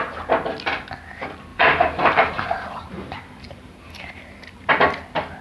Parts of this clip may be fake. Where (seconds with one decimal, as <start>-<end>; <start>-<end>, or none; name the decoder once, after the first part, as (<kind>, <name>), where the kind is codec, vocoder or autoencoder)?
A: 1.5-4.7 (vocoder, BigVGAN v2)